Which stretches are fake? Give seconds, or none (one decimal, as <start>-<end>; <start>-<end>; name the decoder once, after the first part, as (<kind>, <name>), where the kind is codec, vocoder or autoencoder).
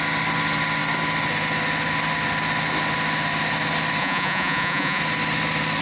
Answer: 4.0-5.0 (vocoder, Vocos)